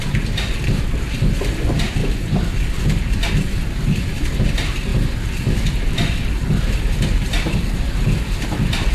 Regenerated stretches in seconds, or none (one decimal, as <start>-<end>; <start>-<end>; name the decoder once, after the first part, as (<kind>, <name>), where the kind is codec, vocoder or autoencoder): none